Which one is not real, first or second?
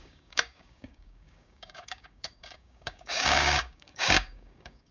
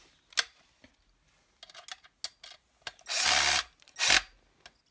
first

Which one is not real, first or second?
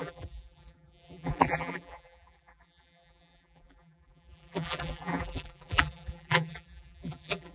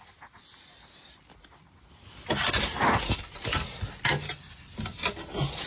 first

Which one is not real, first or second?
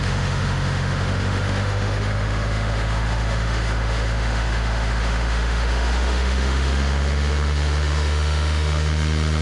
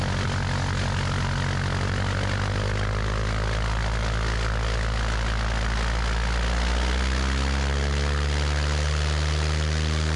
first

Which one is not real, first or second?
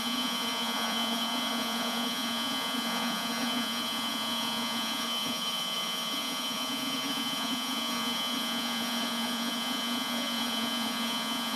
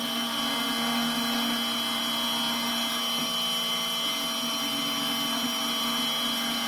first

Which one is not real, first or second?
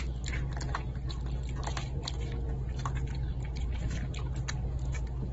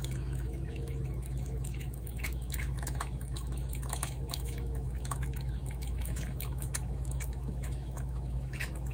second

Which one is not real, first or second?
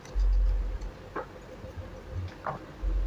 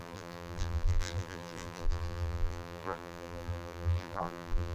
second